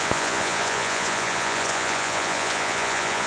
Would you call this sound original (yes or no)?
no